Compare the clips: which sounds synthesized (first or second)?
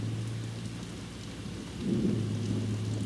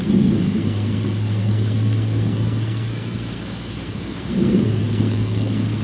second